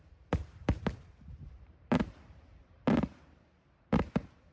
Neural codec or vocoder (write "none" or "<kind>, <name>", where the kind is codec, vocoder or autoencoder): vocoder, BigVGAN v2